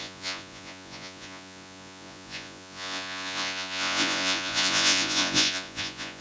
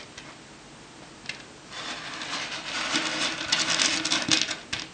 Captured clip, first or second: second